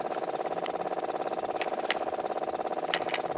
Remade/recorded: recorded